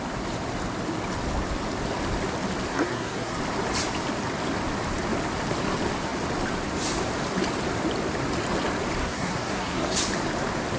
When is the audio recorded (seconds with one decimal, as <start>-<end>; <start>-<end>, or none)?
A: 0.0-2.7; 3.4-9.0; 9.9-10.8